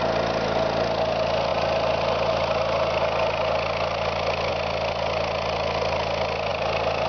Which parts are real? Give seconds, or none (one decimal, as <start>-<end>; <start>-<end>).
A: 0.0-7.1